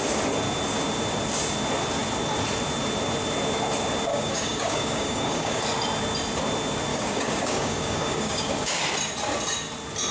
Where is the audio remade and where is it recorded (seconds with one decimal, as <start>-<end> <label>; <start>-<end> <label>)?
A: 0.0-4.1 recorded; 4.1-5.6 remade; 5.6-6.9 recorded; 6.9-8.8 remade; 8.8-10.1 recorded